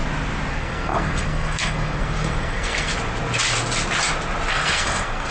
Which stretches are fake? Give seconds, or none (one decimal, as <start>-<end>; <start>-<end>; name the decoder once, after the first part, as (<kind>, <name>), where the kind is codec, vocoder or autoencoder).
0.5-2.9 (codec, SNAC); 4.5-5.3